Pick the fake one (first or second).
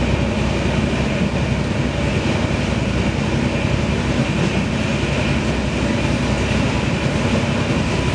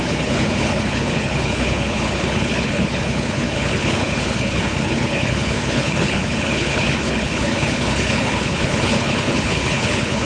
second